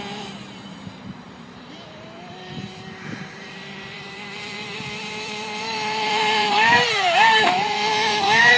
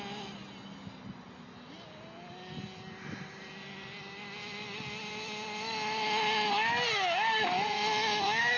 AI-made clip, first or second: first